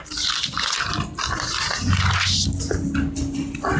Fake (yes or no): no